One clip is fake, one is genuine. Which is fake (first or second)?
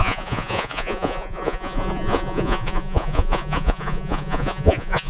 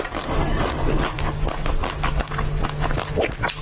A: first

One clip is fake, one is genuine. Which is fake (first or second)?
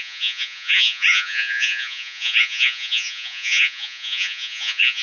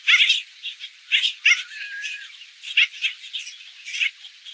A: first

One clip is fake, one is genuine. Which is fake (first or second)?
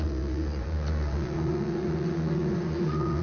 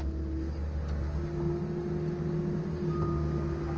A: first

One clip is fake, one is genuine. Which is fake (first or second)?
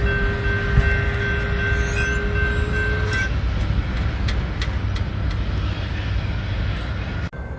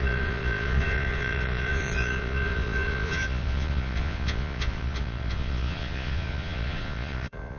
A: second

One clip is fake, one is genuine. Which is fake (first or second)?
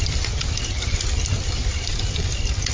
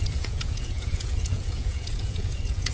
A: second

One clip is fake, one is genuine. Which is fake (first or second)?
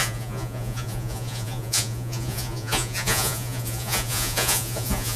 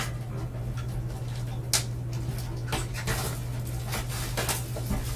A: first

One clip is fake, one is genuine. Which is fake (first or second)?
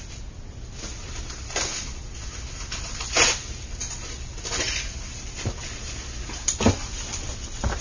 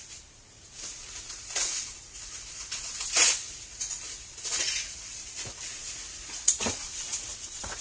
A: second